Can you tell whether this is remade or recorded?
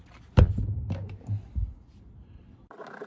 recorded